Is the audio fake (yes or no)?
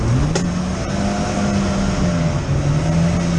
no